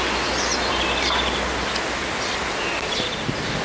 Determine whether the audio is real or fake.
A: real